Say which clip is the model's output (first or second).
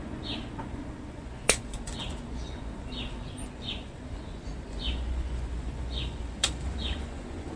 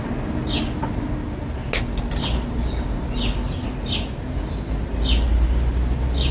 first